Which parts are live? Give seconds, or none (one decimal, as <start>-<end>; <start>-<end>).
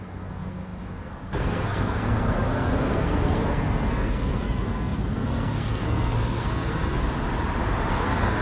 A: 7.0-7.9